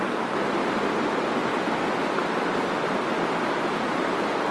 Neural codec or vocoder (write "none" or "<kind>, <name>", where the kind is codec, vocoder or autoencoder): none